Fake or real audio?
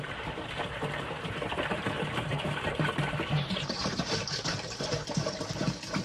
fake